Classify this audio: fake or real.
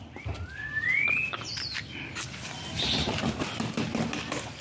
real